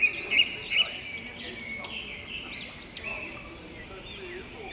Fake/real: real